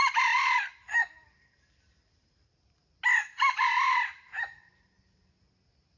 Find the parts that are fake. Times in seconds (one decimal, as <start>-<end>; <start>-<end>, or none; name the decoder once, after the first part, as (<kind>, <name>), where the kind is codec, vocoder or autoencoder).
none